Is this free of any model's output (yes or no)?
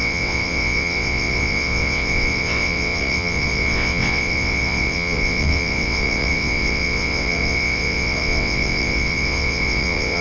no